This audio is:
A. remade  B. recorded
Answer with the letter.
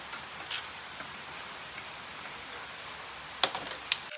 B